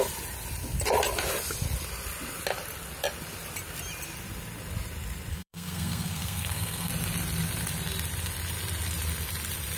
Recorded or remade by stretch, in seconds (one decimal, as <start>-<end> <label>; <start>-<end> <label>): 0.0-5.3 recorded; 5.3-6.9 remade; 6.9-9.8 recorded